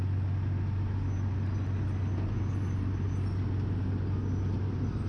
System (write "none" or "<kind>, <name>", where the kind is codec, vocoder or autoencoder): none